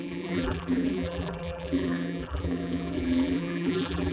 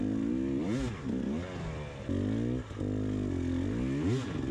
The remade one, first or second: first